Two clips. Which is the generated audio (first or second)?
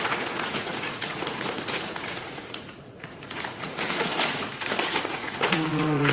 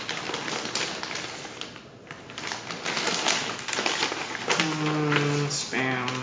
first